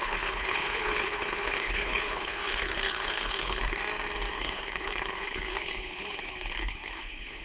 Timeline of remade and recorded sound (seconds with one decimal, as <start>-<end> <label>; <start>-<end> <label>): 0.0-3.8 remade; 3.8-4.3 recorded; 4.3-7.4 remade